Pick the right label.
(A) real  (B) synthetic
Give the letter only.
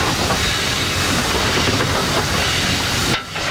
B